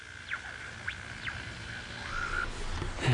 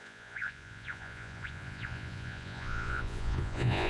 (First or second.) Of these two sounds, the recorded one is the first